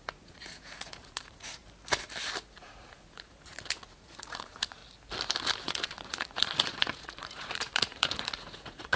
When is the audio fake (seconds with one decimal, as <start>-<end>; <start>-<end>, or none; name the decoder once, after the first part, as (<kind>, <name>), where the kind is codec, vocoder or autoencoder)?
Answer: 0.0-1.6 (vocoder, Vocos); 2.5-4.8; 5.6-9.0